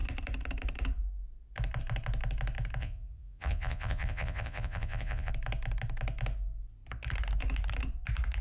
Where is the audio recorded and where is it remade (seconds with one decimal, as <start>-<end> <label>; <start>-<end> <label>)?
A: 0.0-2.8 recorded; 2.8-5.3 remade; 5.3-8.4 recorded